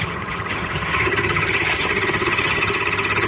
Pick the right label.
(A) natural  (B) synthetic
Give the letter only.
B